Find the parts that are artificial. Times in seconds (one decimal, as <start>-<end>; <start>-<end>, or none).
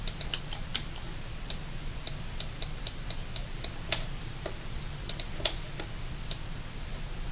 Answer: 3.4-6.1